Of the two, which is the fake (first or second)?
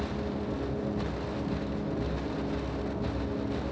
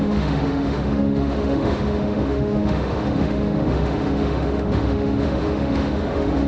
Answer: second